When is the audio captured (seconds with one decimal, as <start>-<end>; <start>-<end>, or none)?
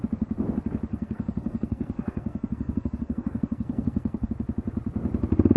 0.0-0.9; 4.3-5.6